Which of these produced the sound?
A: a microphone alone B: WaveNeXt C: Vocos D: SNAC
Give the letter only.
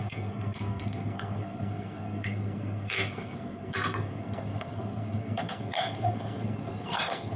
D